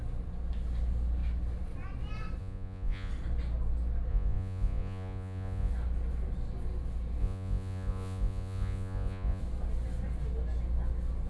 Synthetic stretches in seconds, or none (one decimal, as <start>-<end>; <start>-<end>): 2.4-3.1; 4.1-5.7; 7.2-9.4